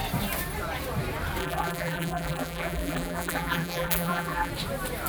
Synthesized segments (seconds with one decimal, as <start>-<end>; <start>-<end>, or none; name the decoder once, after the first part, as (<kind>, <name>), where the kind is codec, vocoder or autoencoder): 1.4-4.5 (vocoder, BigVGAN v2)